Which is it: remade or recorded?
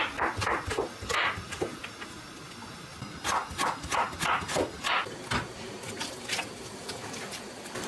recorded